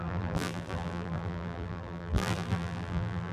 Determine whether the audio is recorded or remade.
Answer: remade